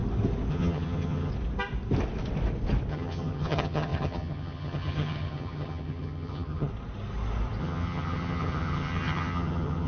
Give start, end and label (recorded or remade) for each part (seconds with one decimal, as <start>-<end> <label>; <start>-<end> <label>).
0.0-0.5 recorded; 0.5-1.3 remade; 1.3-2.9 recorded; 2.9-6.7 remade; 6.7-7.6 recorded; 7.6-9.9 remade